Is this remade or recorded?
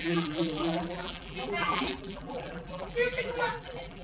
remade